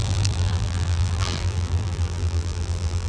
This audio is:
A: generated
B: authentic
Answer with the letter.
A